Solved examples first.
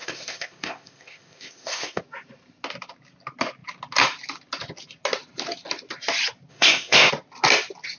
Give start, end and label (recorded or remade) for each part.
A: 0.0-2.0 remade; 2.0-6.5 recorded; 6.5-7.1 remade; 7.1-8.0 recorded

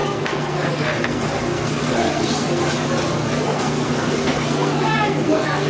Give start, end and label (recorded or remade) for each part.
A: 0.0-2.7 remade; 2.7-3.1 recorded; 3.1-5.7 remade

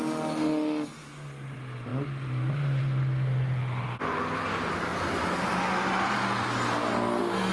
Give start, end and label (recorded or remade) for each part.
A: 0.0-4.9 recorded; 4.9-5.5 remade; 5.5-7.5 recorded

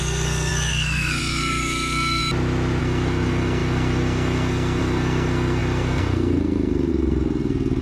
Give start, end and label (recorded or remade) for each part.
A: 0.0-2.2 remade; 2.2-2.8 recorded; 2.8-7.8 remade